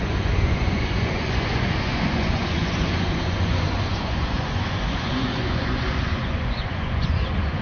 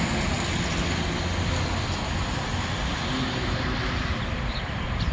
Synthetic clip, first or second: first